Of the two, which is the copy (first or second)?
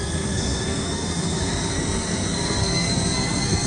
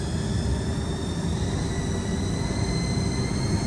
first